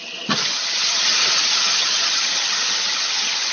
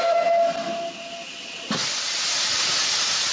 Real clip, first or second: second